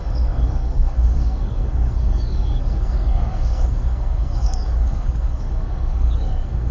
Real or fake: fake